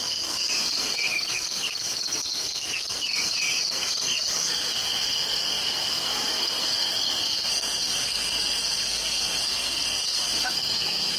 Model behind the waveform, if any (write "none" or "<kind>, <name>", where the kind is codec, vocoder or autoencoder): codec, SNAC